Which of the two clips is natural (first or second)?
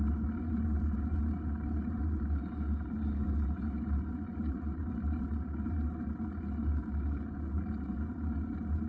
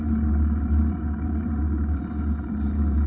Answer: second